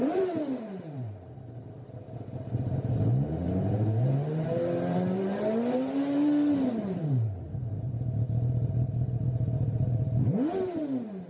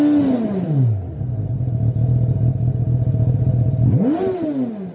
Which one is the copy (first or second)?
first